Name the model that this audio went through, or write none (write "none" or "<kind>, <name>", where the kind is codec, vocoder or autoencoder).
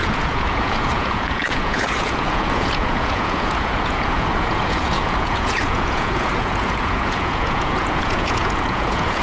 vocoder, Vocos